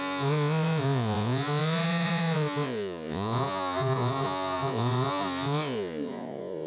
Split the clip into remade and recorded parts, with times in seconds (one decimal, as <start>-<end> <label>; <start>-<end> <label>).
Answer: 0.0-6.7 remade